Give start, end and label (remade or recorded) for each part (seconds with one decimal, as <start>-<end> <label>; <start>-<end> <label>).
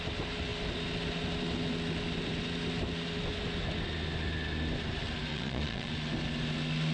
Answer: 0.0-5.3 recorded; 5.3-5.9 remade; 5.9-6.9 recorded